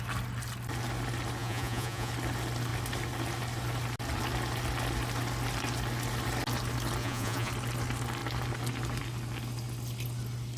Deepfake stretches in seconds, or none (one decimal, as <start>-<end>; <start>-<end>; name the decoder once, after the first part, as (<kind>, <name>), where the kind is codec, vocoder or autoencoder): 1.4-2.1 (vocoder, Vocos); 7.0-7.5